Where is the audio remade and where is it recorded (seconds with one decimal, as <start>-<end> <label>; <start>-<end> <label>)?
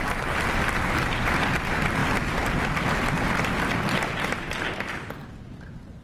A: 0.0-6.0 recorded